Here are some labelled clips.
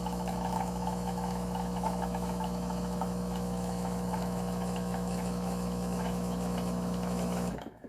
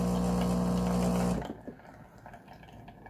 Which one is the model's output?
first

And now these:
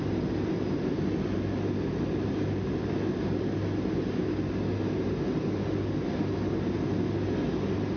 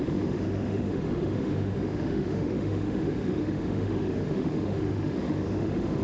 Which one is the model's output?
second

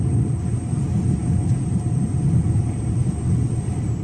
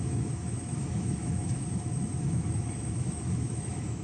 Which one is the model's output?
second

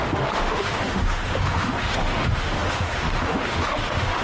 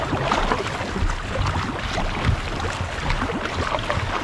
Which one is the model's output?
first